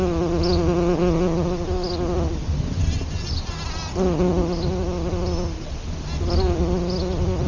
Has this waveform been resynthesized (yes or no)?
no